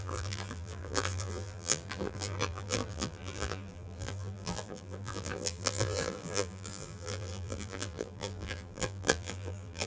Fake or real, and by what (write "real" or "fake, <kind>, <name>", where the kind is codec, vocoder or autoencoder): fake, vocoder, BigVGAN v2